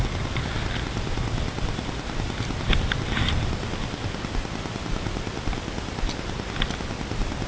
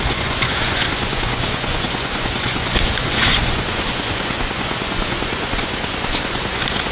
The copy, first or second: second